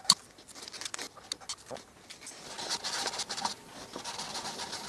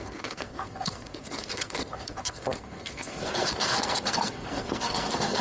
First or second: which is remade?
second